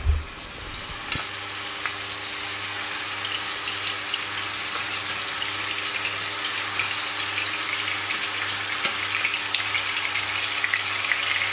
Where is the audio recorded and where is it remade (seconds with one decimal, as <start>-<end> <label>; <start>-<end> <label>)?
0.0-11.5 recorded